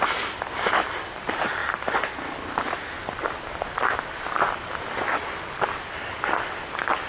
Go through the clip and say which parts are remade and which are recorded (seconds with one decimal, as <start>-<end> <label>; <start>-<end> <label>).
0.0-1.6 remade; 1.6-4.0 recorded; 4.0-7.1 remade